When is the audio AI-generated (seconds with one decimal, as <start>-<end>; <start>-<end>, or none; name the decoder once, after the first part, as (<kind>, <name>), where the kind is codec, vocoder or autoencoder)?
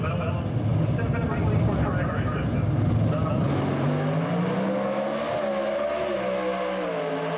none